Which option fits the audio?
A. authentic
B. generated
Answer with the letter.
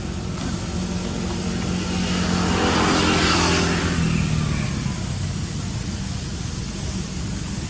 A